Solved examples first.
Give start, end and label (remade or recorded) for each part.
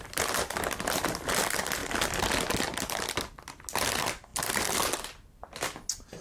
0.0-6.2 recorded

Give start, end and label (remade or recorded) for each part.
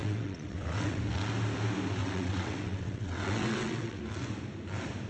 0.0-1.0 remade; 1.0-2.0 recorded; 2.0-4.0 remade; 4.0-5.1 recorded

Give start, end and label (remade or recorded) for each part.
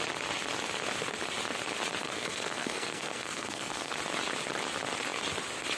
0.0-2.0 recorded; 2.0-3.9 remade; 3.9-5.8 recorded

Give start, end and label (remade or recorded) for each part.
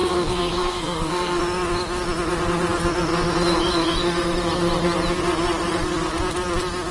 0.0-1.4 remade; 1.4-6.9 recorded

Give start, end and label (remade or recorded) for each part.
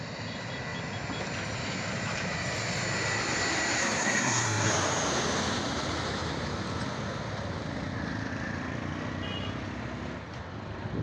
0.0-3.8 recorded; 3.8-4.7 remade; 4.7-11.0 recorded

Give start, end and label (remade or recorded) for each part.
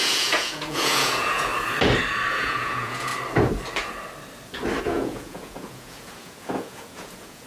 0.0-1.5 remade; 1.5-2.3 recorded; 2.3-3.1 remade; 3.1-4.8 recorded; 4.8-7.5 remade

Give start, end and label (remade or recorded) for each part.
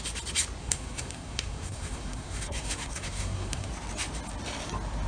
0.0-0.6 recorded; 0.6-3.7 remade; 3.7-5.1 recorded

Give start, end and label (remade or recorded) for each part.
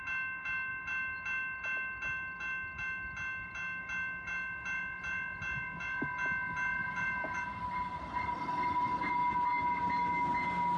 0.0-6.8 recorded; 6.8-8.4 remade; 8.4-10.8 recorded